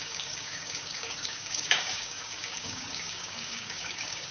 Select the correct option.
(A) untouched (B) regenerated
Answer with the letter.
B